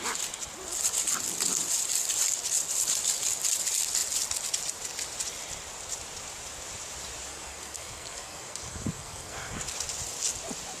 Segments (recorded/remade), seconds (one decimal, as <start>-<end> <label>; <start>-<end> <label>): 0.0-7.3 recorded; 7.3-9.6 remade; 9.6-10.8 recorded